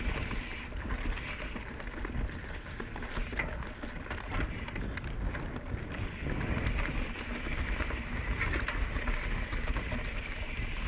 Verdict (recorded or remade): recorded